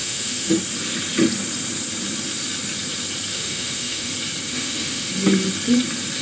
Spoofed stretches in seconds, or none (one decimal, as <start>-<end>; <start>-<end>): 0.0-0.6; 3.3-4.1; 4.5-5.1